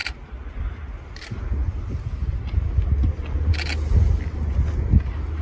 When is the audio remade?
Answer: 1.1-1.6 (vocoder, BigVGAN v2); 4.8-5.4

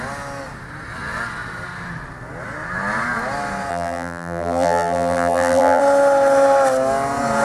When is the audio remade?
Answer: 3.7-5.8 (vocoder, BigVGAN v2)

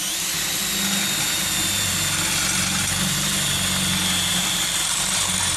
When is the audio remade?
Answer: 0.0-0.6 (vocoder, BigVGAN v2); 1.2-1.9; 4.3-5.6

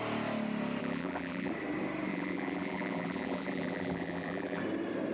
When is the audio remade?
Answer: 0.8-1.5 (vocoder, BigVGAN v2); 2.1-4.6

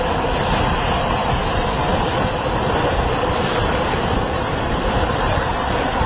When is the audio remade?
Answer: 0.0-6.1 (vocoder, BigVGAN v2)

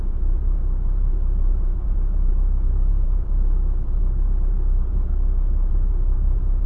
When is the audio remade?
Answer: 0.0-5.1 (vocoder, BigVGAN v2); 5.7-6.7